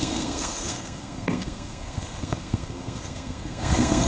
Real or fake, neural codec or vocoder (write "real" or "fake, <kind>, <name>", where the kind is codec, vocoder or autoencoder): fake, codec, SNAC